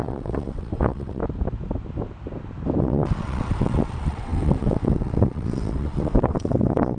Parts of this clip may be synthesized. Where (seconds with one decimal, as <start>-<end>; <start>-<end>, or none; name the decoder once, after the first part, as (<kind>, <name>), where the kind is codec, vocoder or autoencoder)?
0.0-1.2 (vocoder, WaveNeXt); 2.8-7.0